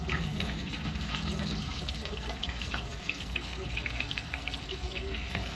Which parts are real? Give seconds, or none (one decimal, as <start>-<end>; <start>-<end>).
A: none